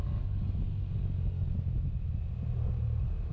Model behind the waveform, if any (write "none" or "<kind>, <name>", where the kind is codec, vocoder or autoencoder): none